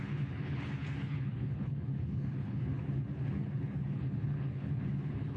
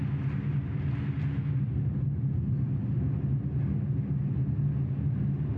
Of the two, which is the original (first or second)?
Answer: second